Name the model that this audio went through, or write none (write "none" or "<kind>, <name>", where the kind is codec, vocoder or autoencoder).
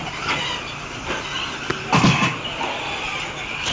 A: none